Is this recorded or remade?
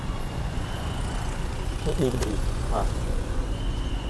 remade